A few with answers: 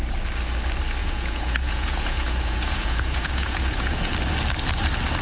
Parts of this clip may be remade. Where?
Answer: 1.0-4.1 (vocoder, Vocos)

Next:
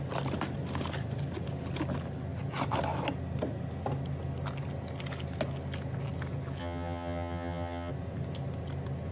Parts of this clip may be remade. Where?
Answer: 6.6-7.9 (vocoder, HiFi-GAN)

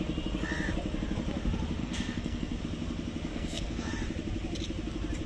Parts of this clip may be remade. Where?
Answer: 1.8-2.6 (codec, SNAC); 3.3-3.9

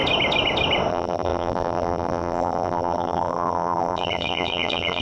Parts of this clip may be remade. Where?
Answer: 0.9-5.0 (vocoder, BigVGAN v2)

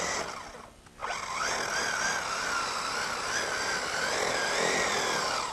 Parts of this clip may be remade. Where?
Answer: none